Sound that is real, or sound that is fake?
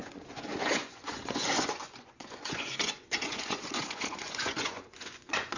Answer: fake